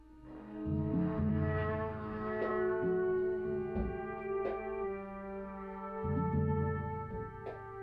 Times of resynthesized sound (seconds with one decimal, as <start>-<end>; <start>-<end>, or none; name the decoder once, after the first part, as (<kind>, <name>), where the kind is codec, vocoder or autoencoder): 1.3-2.5 (autoencoder, DAC-VAE)